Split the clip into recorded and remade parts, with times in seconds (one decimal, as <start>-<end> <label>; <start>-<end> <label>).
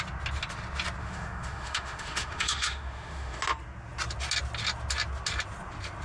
0.0-1.0 recorded; 1.0-3.4 remade; 3.4-6.0 recorded